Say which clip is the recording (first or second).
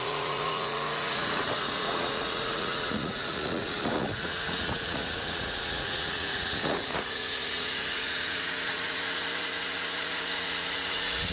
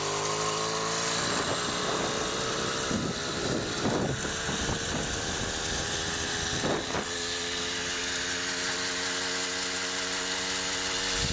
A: second